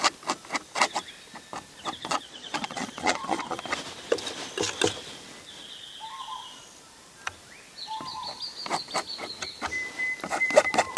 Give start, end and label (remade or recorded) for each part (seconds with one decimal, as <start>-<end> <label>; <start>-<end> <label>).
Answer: 0.0-2.0 recorded; 2.0-3.6 remade; 3.6-11.0 recorded